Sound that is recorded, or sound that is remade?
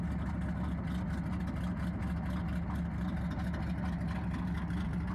recorded